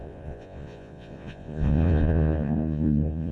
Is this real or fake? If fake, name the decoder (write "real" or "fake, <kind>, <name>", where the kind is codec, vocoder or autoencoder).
fake, vocoder, Vocos